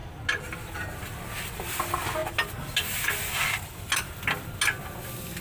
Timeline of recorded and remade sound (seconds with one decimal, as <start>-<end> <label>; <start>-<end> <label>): 0.0-5.4 recorded